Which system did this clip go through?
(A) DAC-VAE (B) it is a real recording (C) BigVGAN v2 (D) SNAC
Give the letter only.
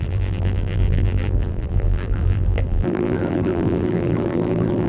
C